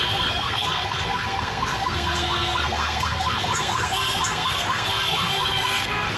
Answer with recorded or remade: remade